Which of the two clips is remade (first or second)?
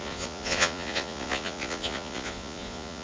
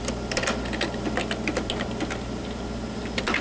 first